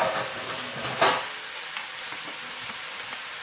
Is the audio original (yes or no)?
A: yes